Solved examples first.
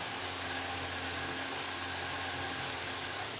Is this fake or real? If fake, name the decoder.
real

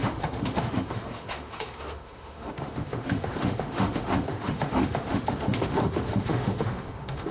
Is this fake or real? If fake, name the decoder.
fake, autoencoder, DAC-VAE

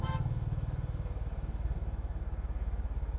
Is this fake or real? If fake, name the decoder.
fake, autoencoder, DAC-VAE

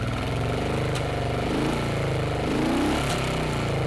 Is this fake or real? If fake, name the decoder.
real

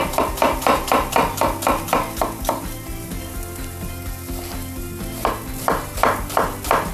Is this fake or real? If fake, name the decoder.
real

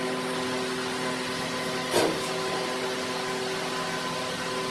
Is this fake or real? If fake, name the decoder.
real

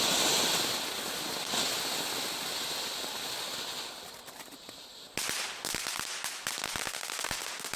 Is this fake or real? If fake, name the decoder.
real